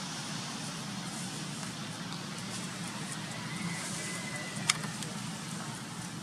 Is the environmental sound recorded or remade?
recorded